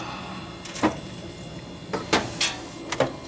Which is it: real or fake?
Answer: real